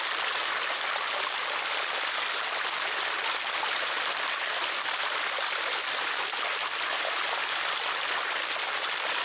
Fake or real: real